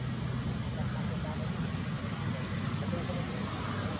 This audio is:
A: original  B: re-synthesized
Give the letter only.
A